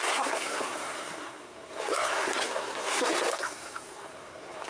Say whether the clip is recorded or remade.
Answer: remade